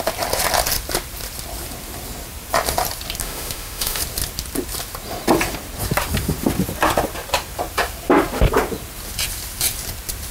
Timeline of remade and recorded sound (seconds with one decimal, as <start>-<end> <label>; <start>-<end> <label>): 0.0-3.2 recorded; 3.2-4.0 remade; 4.0-10.3 recorded